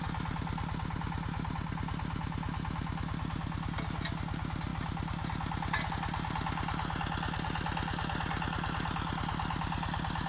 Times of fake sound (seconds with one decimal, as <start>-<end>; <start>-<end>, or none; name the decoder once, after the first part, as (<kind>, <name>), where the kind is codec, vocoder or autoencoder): none